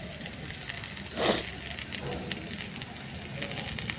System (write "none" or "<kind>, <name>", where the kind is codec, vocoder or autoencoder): none